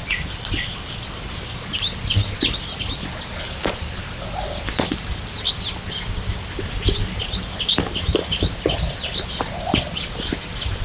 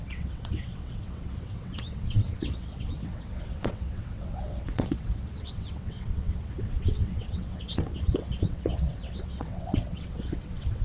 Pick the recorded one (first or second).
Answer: first